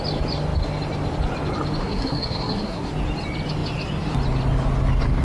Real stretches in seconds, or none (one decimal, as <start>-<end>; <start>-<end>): 0.0-1.8; 2.9-5.2